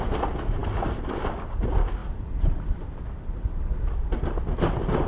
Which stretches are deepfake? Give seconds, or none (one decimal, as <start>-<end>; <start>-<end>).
none